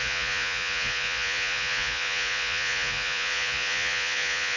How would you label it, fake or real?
fake